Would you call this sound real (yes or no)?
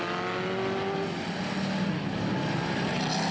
yes